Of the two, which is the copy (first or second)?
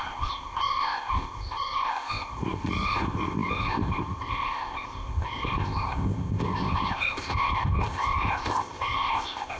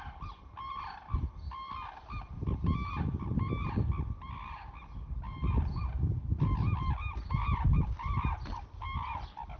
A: first